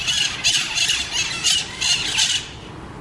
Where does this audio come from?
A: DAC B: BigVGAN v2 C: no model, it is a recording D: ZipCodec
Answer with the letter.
C